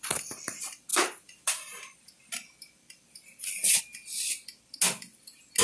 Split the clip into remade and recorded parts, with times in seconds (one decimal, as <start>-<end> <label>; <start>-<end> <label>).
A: 0.0-5.6 recorded